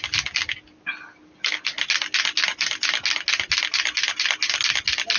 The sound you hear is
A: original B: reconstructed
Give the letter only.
A